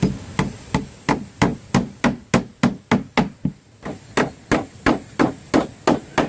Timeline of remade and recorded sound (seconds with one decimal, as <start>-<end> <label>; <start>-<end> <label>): 0.0-6.3 recorded